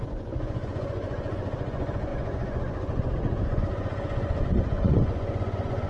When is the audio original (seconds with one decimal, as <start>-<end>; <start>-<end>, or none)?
none